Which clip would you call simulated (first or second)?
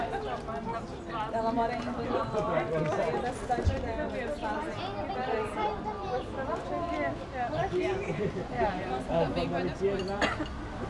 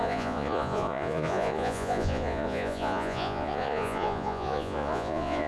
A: second